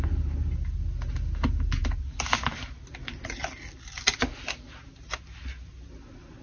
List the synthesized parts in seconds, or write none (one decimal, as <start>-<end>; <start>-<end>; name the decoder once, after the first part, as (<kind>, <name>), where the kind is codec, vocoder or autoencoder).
none